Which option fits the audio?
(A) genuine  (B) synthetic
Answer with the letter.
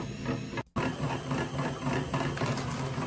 A